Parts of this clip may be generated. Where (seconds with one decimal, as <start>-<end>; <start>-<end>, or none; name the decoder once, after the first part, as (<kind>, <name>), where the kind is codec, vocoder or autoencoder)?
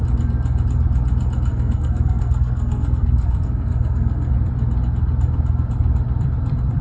1.5-4.3 (codec, SNAC)